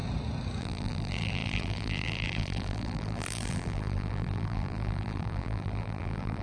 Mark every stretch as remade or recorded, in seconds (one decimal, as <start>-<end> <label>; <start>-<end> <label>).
0.0-0.6 recorded; 0.6-6.4 remade